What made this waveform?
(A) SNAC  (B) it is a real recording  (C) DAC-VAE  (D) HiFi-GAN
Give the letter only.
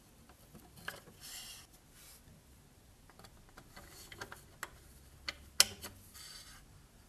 B